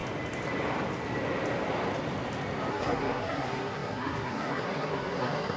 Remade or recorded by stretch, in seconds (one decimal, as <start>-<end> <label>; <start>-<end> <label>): 0.0-2.7 recorded; 2.7-5.6 remade